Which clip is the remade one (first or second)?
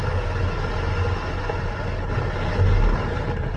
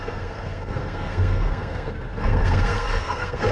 second